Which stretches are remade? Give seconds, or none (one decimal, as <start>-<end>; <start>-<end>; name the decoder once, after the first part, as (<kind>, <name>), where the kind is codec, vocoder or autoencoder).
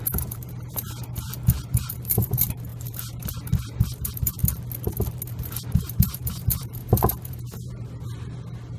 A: 0.0-4.4 (vocoder, BigVGAN v2); 5.3-8.8